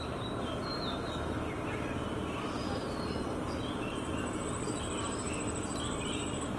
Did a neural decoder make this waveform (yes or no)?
no